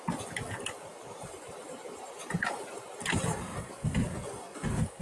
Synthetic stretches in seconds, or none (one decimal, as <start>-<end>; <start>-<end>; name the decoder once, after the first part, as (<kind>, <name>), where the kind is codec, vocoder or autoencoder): 0.9-3.9 (vocoder, BigVGAN v2)